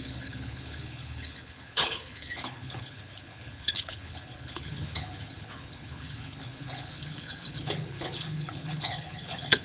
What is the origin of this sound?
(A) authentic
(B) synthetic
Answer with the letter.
B